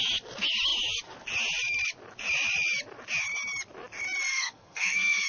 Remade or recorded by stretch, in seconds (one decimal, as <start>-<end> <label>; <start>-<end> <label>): 0.0-4.3 recorded; 4.3-5.3 remade